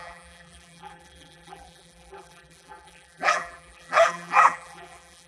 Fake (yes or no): yes